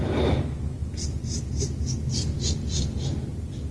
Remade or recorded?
recorded